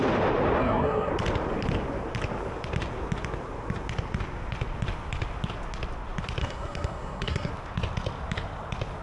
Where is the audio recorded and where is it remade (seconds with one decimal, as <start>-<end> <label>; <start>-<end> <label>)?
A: 0.0-0.6 recorded; 0.6-1.1 remade; 1.1-6.4 recorded; 6.4-7.5 remade; 7.5-9.0 recorded